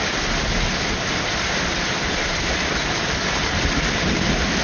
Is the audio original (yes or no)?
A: no